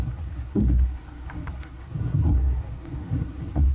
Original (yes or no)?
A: no